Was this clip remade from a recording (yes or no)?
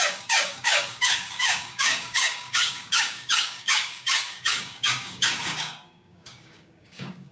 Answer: yes